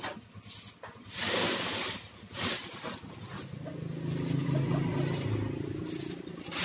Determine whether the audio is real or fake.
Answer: real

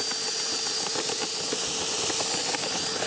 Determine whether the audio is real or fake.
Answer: real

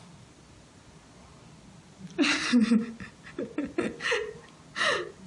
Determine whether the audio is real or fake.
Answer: real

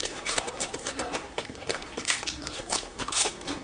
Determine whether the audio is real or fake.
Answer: fake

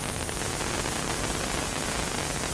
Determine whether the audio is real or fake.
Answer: real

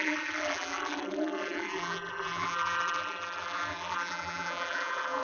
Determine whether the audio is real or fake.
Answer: fake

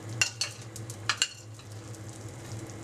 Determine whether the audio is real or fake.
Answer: real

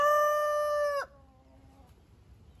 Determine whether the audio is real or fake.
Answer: real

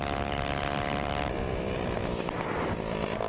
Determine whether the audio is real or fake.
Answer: fake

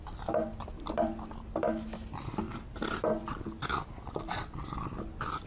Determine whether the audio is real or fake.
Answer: real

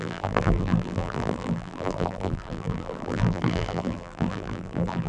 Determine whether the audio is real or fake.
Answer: fake